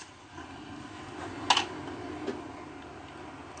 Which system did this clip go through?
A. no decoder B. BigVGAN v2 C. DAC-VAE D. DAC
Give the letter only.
A